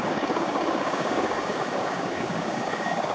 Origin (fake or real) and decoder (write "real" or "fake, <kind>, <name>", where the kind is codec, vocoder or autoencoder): fake, codec, DAC